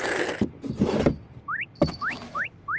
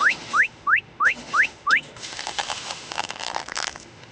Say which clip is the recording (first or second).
first